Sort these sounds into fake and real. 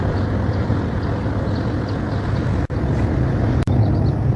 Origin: real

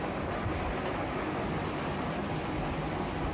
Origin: real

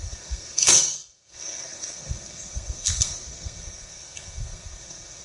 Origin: fake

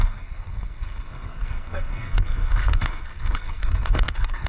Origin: fake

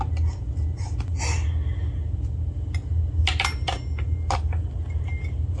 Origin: real